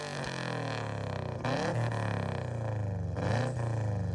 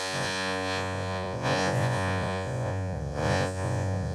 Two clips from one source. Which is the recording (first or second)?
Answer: first